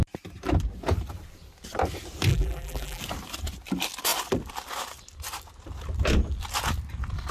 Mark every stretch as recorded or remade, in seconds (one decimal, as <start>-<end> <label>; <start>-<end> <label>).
0.0-2.3 recorded; 2.3-3.0 remade; 3.0-7.3 recorded